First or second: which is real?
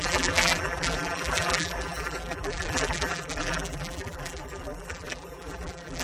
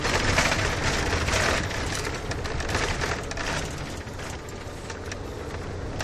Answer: second